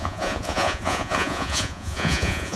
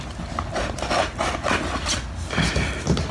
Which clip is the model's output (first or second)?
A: first